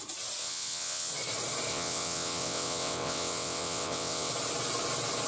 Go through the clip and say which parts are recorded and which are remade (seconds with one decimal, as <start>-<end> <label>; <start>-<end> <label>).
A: 0.0-0.4 recorded; 0.4-1.1 remade; 1.1-1.7 recorded; 1.7-4.3 remade; 4.3-5.3 recorded